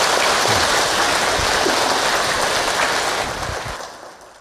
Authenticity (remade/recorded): recorded